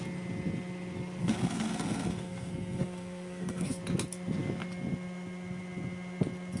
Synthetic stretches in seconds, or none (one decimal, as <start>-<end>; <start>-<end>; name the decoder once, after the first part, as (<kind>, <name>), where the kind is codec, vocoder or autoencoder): 1.2-3.8 (codec, SNAC)

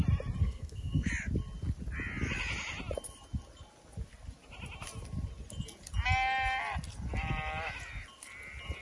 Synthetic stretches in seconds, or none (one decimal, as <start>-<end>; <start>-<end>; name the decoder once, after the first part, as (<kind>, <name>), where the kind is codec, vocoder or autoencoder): 0.4-1.1 (codec, SNAC)

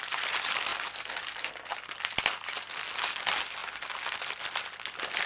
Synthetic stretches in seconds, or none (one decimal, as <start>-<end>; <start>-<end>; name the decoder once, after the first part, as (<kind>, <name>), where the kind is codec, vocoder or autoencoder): none